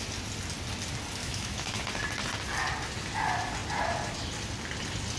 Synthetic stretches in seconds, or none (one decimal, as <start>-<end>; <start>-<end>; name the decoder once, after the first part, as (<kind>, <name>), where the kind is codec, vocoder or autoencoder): 1.2-1.8 (autoencoder, DAC-VAE)